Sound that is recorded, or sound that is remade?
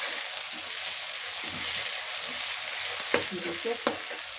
recorded